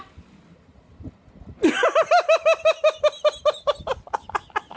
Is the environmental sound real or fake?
real